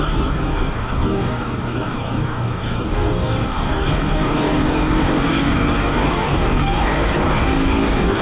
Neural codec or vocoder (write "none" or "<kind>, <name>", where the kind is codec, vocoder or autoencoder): codec, DAC